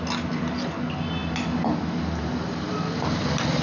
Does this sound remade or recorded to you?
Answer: recorded